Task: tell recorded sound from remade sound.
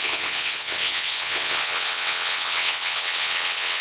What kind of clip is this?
remade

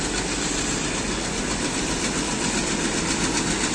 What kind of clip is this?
recorded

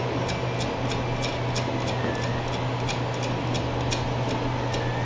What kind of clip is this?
recorded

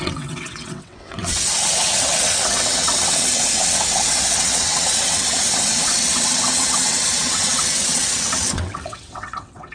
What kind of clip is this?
remade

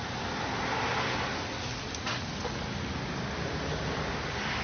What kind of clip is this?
recorded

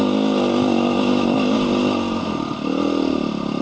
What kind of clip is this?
recorded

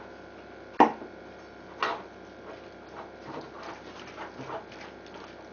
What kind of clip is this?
recorded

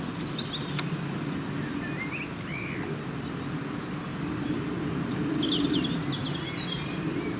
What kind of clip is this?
recorded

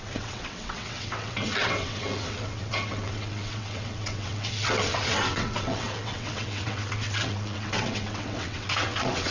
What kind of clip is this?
remade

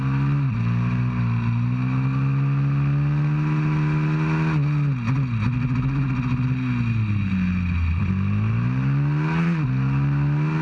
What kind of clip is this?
recorded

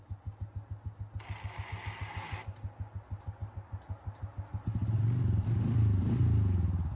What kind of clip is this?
recorded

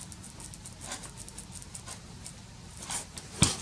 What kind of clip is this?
recorded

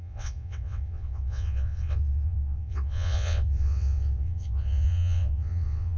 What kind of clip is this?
remade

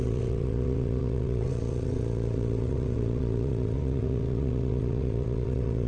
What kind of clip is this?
remade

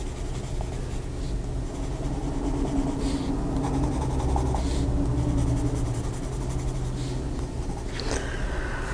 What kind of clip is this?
recorded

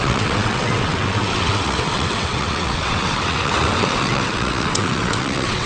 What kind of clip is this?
remade